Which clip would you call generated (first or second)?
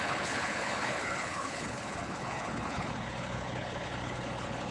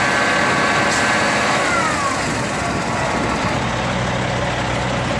first